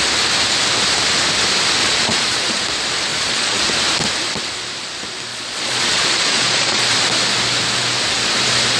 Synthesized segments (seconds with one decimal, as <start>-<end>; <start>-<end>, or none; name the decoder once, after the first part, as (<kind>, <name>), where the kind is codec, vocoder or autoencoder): 1.8-2.6 (vocoder, Vocos); 3.1-3.6; 5.3-6.8